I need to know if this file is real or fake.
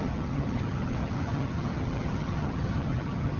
fake